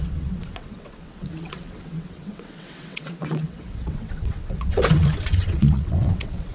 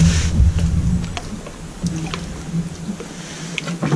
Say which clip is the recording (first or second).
second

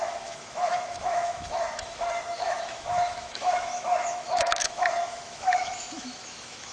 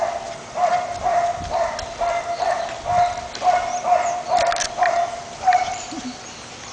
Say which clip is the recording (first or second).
second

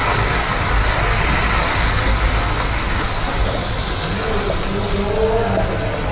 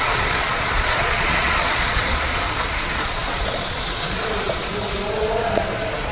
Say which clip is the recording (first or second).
first